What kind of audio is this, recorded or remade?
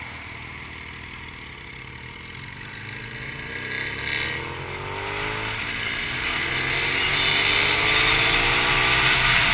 recorded